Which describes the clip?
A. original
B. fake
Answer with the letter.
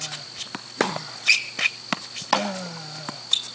A